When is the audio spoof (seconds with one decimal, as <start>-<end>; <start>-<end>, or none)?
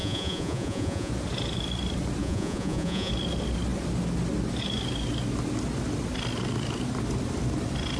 0.0-1.1; 2.2-3.1